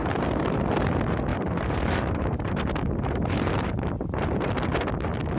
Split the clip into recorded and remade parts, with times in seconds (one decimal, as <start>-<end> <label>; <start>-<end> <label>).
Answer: 0.0-0.6 remade; 0.6-1.3 recorded; 1.3-4.5 remade; 4.5-5.4 recorded